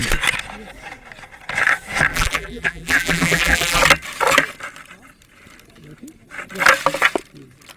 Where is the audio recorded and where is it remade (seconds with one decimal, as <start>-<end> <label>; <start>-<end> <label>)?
0.0-2.1 recorded; 2.1-3.8 remade; 3.8-7.8 recorded